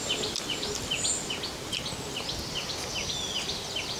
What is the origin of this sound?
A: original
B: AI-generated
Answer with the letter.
A